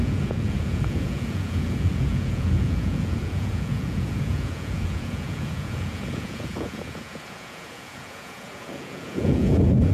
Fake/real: fake